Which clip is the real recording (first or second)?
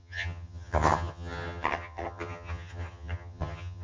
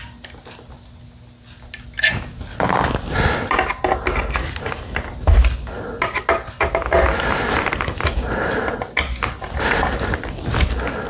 second